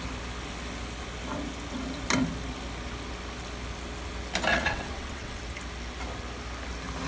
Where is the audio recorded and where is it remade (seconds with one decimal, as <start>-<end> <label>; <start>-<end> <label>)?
0.0-4.5 recorded; 4.5-5.4 remade; 5.4-7.1 recorded